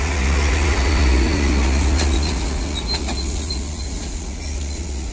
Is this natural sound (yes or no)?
no